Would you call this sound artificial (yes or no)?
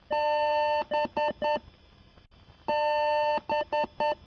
no